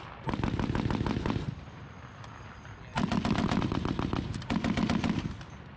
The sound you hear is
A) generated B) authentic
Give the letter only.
B